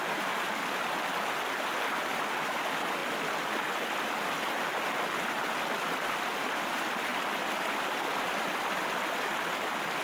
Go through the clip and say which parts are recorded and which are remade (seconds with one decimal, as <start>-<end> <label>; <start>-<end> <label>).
0.0-10.0 recorded